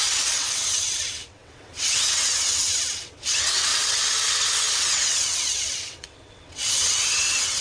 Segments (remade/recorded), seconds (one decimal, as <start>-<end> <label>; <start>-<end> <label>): 0.0-7.6 remade